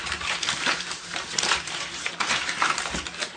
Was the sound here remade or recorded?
remade